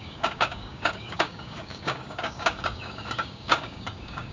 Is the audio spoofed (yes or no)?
yes